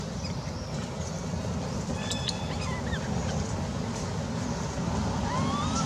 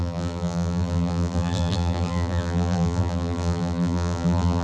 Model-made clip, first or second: second